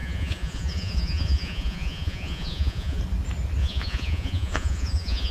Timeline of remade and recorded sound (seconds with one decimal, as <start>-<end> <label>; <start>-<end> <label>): 0.0-3.0 remade; 3.0-3.6 recorded; 3.6-5.3 remade